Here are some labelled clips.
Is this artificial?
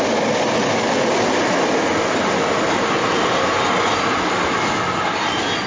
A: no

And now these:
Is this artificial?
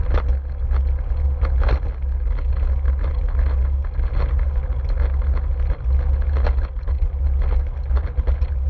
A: no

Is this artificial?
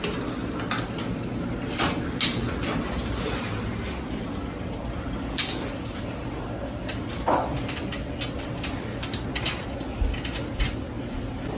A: no